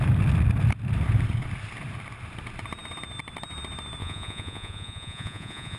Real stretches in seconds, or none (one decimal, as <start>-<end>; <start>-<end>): 0.0-4.0

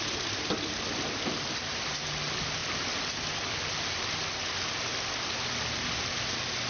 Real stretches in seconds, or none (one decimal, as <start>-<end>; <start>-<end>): 0.0-2.6; 3.1-6.7

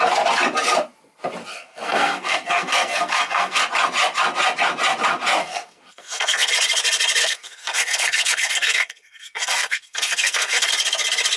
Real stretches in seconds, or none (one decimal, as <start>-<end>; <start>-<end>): 0.0-1.5; 3.6-5.4; 6.5-7.2; 10.7-11.4

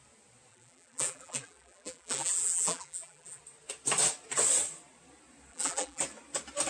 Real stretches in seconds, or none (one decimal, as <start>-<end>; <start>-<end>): 0.0-0.5; 3.4-5.5; 6.0-6.7

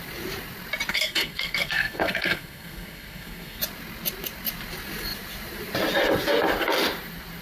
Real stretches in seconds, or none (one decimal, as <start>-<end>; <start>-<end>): 0.0-0.9; 3.6-7.4

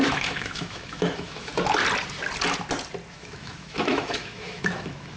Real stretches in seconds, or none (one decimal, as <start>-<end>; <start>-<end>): 1.5-3.1

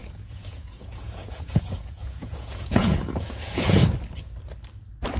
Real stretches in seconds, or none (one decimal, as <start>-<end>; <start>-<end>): 3.8-5.2